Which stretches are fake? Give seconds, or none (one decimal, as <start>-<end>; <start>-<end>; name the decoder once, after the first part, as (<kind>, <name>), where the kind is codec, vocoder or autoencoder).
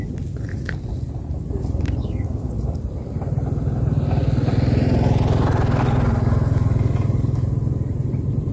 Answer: 2.0-2.5 (codec, SNAC)